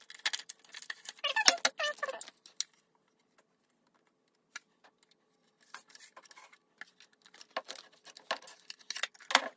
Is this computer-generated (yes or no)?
no